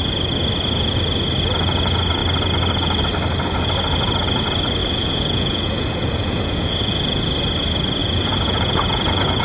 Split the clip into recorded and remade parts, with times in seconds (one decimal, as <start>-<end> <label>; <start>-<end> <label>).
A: 0.0-4.8 recorded; 4.8-7.2 remade; 7.2-8.0 recorded; 8.0-9.4 remade